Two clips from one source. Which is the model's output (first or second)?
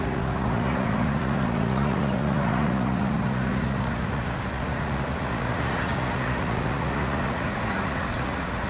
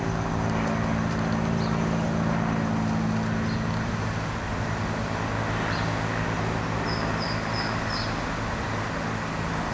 first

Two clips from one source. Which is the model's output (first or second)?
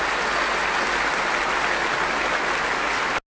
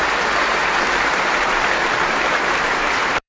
second